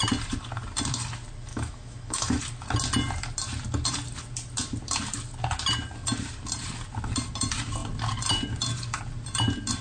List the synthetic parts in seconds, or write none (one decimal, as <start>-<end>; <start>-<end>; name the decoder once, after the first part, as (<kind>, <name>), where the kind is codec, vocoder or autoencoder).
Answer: 1.5-2.4 (autoencoder, DAC-VAE)